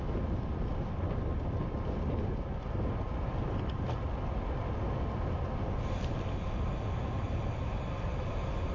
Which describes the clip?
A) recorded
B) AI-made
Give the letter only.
A